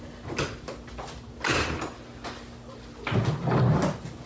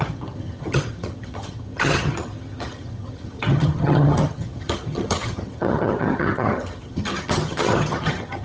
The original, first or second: first